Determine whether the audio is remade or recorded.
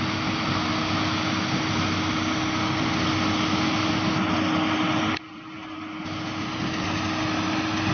recorded